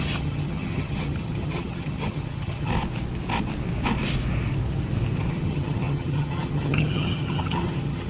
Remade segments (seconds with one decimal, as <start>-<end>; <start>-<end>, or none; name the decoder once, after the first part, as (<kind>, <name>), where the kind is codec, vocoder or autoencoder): 0.0-2.7 (vocoder, HiFi-GAN); 5.3-8.1